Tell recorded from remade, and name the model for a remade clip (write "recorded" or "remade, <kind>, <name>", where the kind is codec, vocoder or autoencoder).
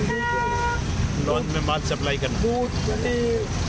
recorded